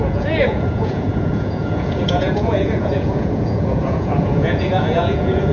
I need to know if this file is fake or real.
fake